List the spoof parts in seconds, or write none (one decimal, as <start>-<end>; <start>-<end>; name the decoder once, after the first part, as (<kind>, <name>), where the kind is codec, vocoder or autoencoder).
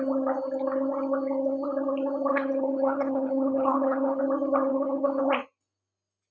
2.3-4.2 (codec, HILCodec); 4.7-5.2